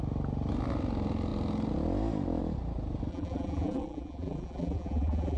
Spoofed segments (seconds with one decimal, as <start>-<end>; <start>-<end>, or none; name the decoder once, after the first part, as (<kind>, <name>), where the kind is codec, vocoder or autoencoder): 3.1-5.4 (vocoder, BigVGAN v2)